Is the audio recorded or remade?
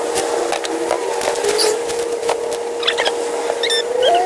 recorded